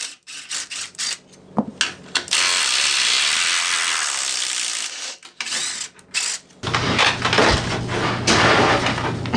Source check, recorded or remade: recorded